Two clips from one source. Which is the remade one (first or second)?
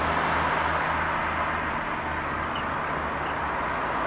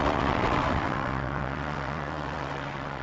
second